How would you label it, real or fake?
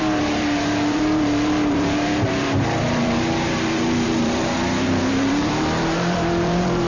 fake